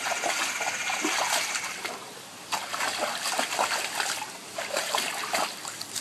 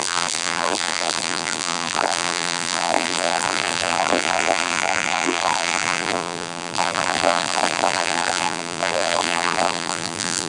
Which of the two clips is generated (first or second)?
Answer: second